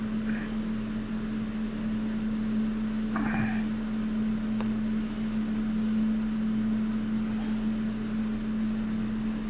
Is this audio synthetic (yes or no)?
no